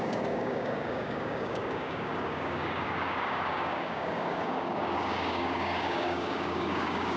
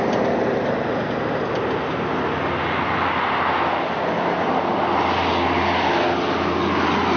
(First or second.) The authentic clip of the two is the second